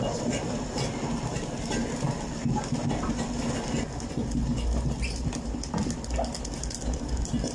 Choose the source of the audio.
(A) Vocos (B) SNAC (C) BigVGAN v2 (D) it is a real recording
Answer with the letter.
D